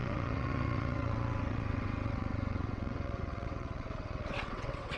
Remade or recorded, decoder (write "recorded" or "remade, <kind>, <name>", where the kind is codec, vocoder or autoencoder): remade, vocoder, WaveNeXt